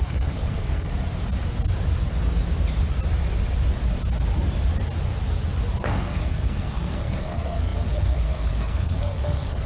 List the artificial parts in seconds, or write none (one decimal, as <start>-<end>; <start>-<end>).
0.0-0.9; 5.8-9.7